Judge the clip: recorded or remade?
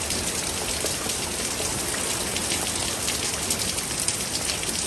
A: recorded